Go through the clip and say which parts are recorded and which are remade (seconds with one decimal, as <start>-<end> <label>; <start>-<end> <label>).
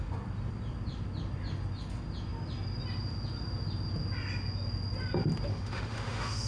0.0-5.5 recorded; 5.5-6.5 remade